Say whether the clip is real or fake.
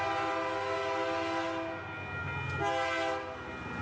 real